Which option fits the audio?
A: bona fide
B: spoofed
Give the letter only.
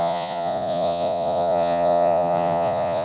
B